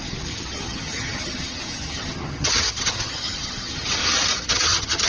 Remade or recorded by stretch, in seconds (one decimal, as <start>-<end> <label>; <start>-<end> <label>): 0.0-4.0 remade; 4.0-4.5 recorded; 4.5-5.1 remade